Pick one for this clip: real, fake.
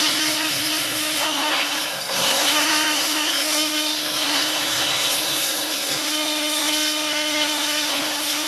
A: fake